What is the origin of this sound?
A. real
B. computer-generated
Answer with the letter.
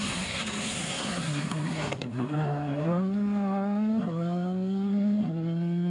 B